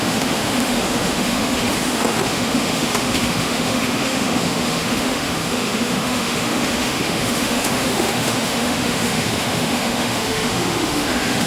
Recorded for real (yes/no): no